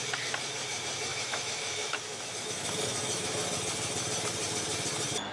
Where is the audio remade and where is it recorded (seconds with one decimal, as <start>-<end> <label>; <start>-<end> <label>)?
0.0-1.1 recorded; 1.1-3.3 remade; 3.3-5.3 recorded